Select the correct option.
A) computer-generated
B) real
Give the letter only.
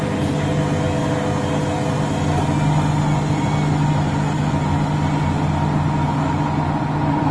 B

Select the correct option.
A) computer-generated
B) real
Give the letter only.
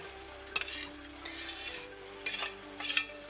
B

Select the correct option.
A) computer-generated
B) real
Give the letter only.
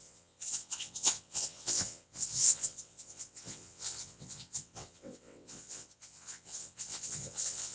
A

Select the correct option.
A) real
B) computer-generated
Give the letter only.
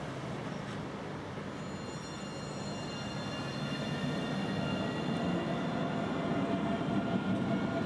A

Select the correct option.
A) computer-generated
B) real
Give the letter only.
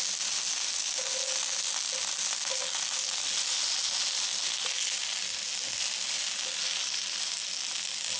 B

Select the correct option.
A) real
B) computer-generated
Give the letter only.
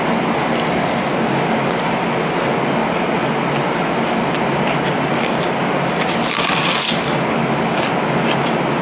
A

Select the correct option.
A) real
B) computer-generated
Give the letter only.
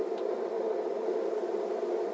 A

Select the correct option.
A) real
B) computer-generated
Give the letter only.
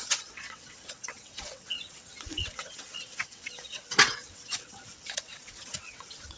B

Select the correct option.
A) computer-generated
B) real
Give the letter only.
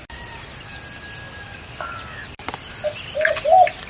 B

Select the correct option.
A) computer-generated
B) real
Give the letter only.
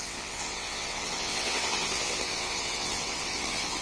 A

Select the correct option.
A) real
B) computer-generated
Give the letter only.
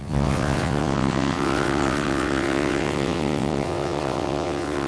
B